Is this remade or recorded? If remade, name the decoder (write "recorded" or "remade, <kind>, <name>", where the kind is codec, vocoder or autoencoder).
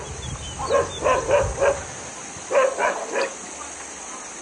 recorded